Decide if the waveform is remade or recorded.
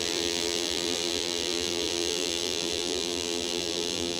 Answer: remade